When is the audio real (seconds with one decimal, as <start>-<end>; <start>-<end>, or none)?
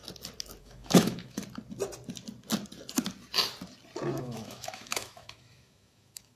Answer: 0.0-0.6; 1.4-4.2